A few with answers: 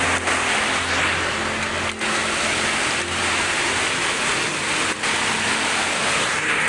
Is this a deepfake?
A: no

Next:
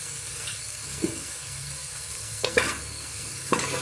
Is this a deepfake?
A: yes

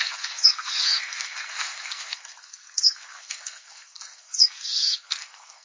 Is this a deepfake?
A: yes